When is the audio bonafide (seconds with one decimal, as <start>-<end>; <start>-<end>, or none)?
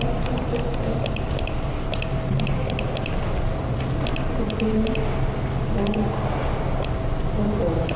0.0-8.0